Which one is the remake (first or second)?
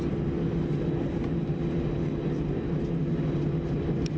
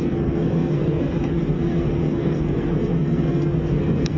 second